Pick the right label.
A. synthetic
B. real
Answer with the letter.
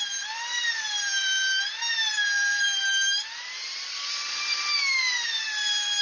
A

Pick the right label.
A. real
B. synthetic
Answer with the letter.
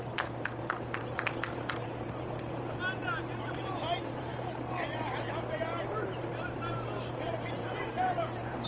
B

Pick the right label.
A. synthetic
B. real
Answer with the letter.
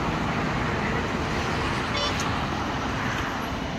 B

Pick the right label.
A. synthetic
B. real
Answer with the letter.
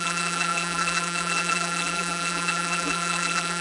A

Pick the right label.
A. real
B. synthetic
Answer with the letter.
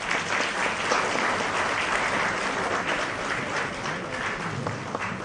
A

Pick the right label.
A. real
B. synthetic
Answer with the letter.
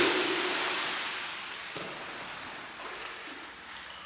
A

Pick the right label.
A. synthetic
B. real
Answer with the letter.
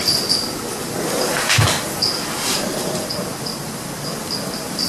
B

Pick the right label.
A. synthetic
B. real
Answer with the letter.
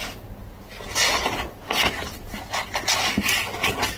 B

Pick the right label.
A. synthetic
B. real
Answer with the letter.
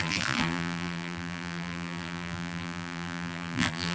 A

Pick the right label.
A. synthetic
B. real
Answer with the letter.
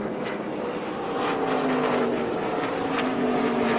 A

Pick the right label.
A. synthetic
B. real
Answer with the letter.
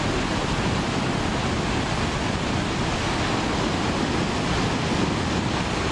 B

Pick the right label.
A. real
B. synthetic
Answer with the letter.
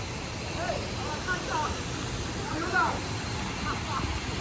A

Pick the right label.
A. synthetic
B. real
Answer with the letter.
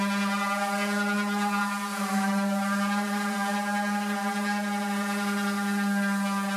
B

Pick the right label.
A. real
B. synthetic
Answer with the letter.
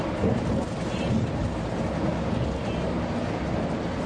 A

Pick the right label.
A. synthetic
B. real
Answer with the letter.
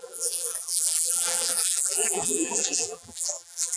A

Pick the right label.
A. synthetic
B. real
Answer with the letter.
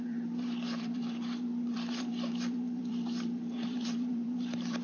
A